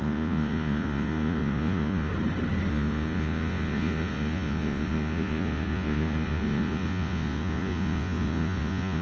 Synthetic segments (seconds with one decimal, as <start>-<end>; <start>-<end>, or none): 0.0-2.1; 2.7-9.0